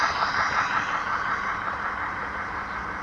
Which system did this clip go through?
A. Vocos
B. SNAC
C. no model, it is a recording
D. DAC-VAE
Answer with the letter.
C